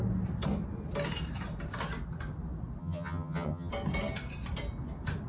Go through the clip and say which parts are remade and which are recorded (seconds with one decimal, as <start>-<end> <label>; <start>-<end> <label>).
0.0-2.8 recorded; 2.8-3.7 remade; 3.7-5.3 recorded